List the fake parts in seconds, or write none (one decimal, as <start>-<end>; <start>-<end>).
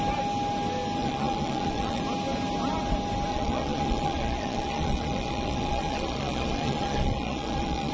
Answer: 1.0-2.0; 3.3-7.9